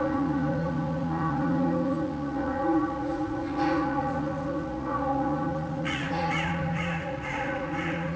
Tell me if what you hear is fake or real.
fake